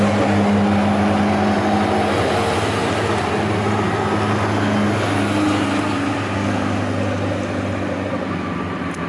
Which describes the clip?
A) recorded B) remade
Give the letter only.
A